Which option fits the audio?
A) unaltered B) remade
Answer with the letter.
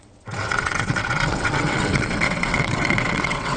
B